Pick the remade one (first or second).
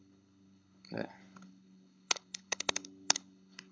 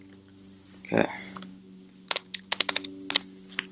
first